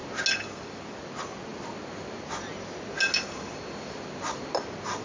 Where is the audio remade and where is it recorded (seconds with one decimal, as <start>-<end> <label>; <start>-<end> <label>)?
0.0-5.0 recorded